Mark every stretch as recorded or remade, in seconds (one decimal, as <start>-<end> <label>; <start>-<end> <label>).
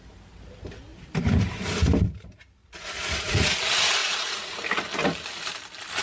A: 0.0-2.6 recorded; 2.6-3.5 remade; 3.5-4.0 recorded; 4.0-4.6 remade; 4.6-6.0 recorded